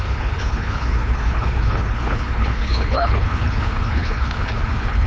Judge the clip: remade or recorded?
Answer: remade